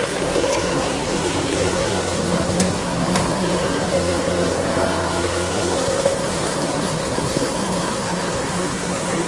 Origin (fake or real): fake